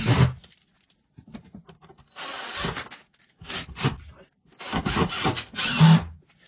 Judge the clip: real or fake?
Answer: real